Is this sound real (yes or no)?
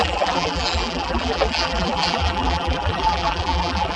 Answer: no